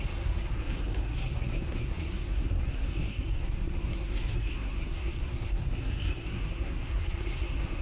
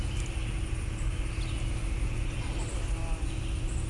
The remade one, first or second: first